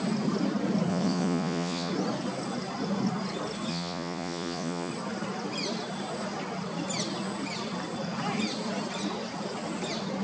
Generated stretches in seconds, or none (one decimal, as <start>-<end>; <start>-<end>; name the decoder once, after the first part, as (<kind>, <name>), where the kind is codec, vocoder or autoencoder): 0.9-1.9 (vocoder, Vocos); 3.7-4.9